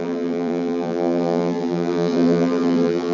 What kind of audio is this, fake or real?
fake